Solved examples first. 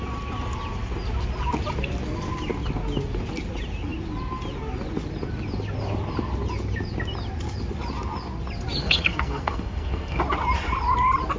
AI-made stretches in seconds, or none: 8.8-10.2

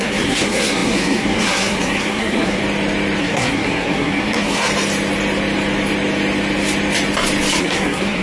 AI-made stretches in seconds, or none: 0.0-2.6; 3.2-4.7; 7.6-8.2